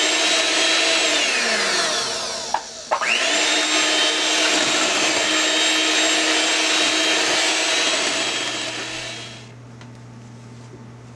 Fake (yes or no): no